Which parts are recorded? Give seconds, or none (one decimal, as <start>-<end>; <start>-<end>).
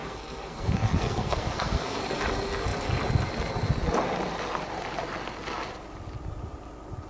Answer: 2.0-7.1